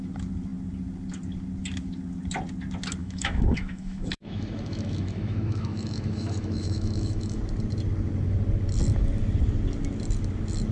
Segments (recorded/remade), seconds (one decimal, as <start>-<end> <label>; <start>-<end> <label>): 0.0-3.0 recorded; 3.0-7.4 remade; 7.4-10.7 recorded